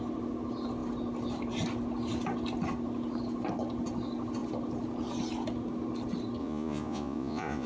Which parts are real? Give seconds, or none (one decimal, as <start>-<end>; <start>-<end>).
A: 0.0-6.4